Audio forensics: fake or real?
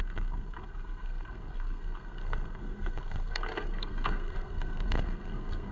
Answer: fake